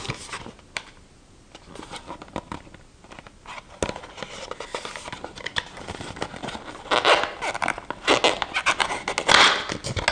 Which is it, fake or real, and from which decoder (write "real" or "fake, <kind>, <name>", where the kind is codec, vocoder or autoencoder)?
real